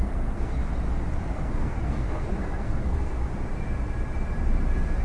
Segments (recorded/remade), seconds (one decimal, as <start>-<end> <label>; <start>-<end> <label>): 0.0-0.6 remade; 0.6-1.3 recorded; 1.3-3.2 remade; 3.2-5.0 recorded